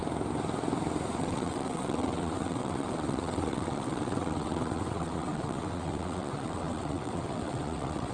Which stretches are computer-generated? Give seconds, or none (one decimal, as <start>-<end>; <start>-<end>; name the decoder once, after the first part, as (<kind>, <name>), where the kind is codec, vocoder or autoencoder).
1.2-8.1 (vocoder, WaveNeXt)